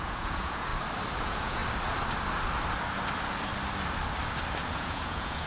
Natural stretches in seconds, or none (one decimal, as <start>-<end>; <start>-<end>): 0.7-1.2; 1.6-4.7